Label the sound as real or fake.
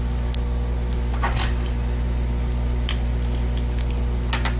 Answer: real